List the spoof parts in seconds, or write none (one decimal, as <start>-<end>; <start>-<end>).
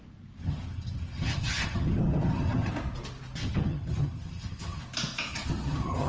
0.4-2.7; 3.4-4.8; 5.3-6.1